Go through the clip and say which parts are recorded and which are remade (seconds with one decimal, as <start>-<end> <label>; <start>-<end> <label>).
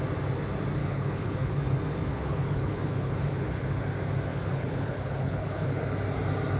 0.0-0.8 recorded; 0.8-1.6 remade; 1.6-2.1 recorded; 2.1-3.8 remade; 3.8-4.3 recorded; 4.3-5.8 remade; 5.8-6.6 recorded